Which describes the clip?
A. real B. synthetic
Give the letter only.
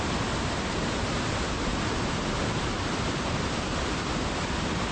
A